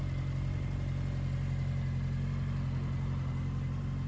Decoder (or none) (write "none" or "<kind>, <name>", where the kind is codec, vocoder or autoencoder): none